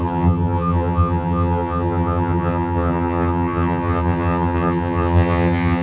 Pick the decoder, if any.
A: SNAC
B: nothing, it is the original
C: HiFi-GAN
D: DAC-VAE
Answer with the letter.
C